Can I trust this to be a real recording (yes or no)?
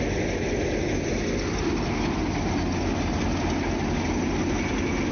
yes